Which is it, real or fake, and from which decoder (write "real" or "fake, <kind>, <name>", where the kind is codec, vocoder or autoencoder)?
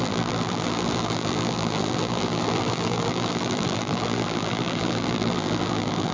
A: fake, vocoder, BigVGAN v2